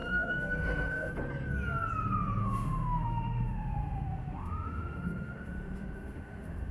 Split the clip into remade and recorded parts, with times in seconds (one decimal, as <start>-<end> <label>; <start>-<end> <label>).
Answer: 0.0-1.1 remade; 1.1-2.4 recorded; 2.4-6.7 remade